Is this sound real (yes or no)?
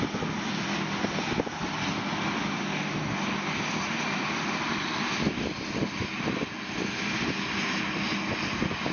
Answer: yes